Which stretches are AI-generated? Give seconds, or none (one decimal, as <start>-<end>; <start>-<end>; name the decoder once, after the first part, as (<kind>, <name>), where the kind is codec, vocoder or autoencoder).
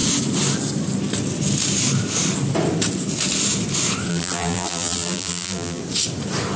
4.1-5.8 (vocoder, BigVGAN v2)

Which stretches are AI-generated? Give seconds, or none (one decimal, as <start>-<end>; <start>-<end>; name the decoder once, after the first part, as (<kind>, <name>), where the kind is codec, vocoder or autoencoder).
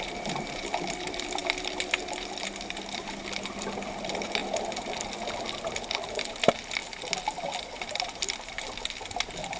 0.0-1.4 (vocoder, BigVGAN v2); 2.1-4.4; 5.7-6.8; 7.6-9.6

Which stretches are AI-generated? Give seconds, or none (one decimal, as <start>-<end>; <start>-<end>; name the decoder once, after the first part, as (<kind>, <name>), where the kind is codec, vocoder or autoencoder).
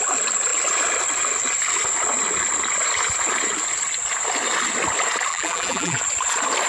5.3-6.0 (vocoder, BigVGAN v2)